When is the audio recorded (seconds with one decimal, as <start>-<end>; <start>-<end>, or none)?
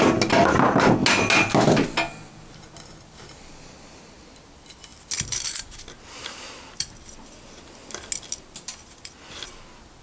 0.0-10.0